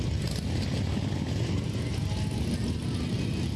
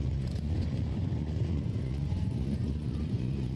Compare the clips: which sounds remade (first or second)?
second